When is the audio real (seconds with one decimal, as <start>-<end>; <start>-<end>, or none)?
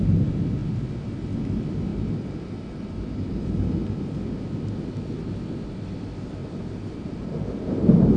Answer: 0.0-1.9; 3.7-6.4; 7.7-8.2